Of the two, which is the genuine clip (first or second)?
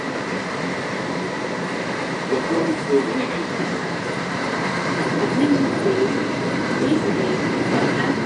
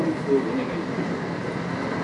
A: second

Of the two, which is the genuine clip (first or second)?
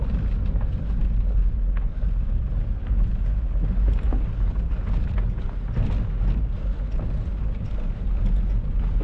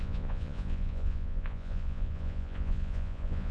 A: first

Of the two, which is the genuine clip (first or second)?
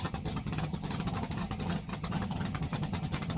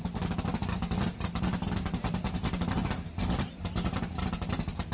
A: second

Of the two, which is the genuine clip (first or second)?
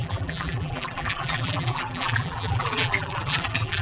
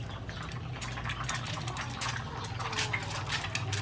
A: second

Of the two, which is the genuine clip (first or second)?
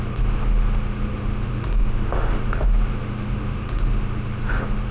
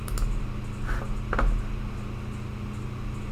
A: second